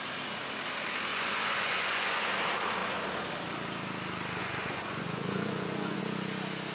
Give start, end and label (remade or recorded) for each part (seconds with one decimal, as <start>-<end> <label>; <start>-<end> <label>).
0.0-1.1 recorded; 1.1-2.3 remade; 2.3-4.4 recorded; 4.4-6.0 remade; 6.0-6.7 recorded